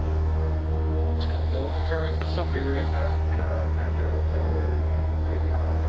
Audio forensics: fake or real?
fake